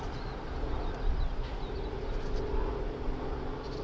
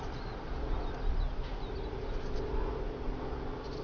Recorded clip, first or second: second